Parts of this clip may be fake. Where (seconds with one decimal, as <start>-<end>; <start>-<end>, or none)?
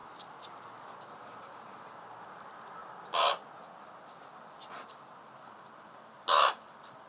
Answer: none